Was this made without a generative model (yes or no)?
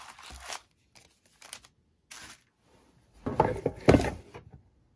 yes